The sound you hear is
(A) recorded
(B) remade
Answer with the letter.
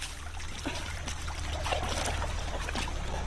A